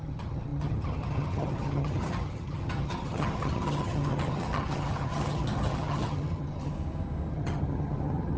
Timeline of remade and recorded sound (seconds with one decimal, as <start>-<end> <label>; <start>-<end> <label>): 0.0-6.7 remade; 6.7-7.3 recorded; 7.3-8.4 remade